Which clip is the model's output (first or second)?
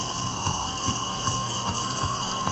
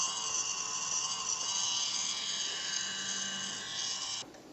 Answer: first